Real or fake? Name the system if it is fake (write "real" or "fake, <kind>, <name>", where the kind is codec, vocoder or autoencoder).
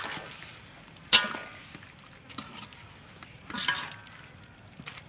real